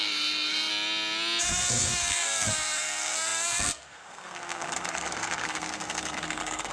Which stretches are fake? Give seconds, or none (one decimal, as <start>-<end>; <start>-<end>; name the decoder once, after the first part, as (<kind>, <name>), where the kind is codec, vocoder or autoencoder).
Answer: 0.0-0.7 (codec, SNAC); 1.4-6.7